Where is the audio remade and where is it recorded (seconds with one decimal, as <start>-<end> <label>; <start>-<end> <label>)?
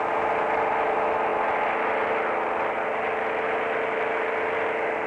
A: 0.0-5.1 recorded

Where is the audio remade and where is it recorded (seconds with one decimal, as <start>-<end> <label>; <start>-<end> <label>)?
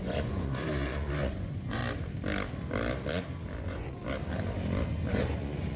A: 0.0-1.8 remade; 1.8-3.6 recorded; 3.6-4.0 remade; 4.0-5.1 recorded; 5.1-5.8 remade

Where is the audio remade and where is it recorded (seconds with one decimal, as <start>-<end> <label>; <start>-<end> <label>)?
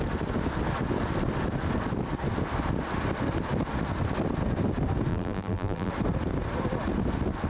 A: 0.0-5.1 recorded; 5.1-5.9 remade; 5.9-7.5 recorded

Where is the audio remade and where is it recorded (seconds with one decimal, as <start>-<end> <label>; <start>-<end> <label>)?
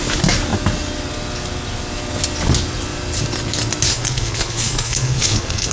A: 0.0-3.9 recorded; 3.9-5.7 remade